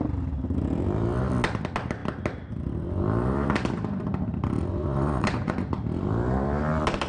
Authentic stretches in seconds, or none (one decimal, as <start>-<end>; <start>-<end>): 0.0-4.8; 5.7-7.1